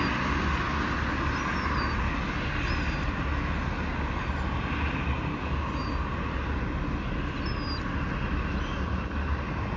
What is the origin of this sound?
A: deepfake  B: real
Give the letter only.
B